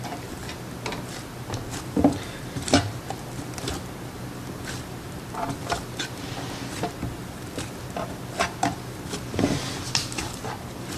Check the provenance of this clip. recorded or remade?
remade